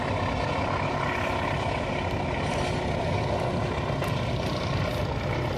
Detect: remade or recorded recorded